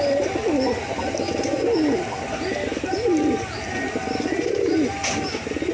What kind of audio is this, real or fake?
real